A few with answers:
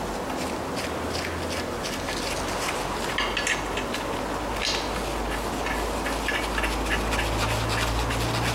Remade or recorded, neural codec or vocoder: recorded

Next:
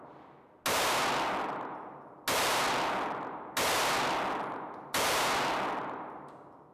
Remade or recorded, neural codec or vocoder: recorded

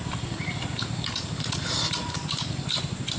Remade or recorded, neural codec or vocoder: recorded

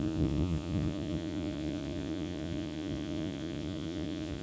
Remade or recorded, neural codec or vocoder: remade, vocoder, Vocos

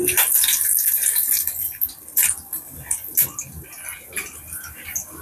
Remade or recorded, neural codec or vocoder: recorded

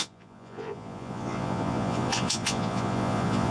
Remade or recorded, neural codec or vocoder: remade, vocoder, Vocos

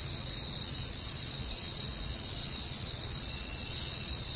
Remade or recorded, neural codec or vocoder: remade, vocoder, Vocos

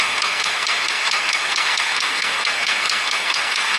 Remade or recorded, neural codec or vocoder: remade, codec, SNAC